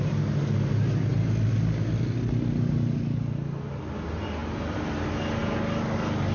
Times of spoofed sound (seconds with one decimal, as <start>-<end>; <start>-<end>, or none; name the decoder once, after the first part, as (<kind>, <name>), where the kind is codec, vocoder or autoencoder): none